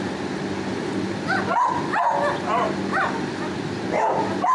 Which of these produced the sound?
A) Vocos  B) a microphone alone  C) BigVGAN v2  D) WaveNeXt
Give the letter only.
B